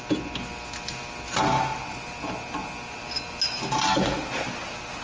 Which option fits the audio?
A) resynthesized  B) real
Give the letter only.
B